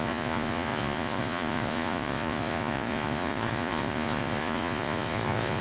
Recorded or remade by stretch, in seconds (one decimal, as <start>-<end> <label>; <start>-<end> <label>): 0.0-5.6 remade